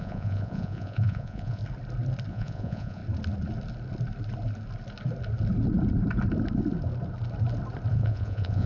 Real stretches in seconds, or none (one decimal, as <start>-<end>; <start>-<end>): 1.6-2.3; 3.0-7.9